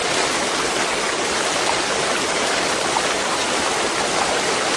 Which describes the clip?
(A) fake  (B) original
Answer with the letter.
B